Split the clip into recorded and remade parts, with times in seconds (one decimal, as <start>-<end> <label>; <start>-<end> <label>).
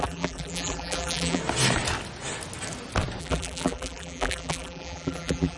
0.0-1.4 remade; 1.4-3.2 recorded; 3.2-5.6 remade